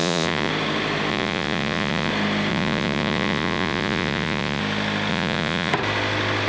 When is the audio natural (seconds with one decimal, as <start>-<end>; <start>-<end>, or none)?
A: 0.5-1.1; 2.1-2.5; 4.6-5.1; 5.7-6.5